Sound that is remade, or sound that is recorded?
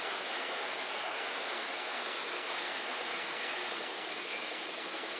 remade